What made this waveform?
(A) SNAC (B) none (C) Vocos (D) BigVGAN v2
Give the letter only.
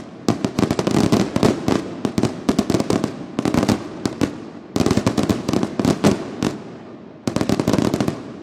B